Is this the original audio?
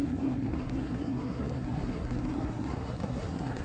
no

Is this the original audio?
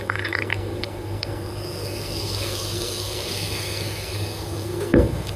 no